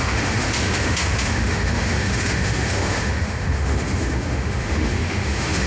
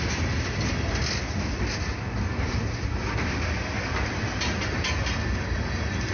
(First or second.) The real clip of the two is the second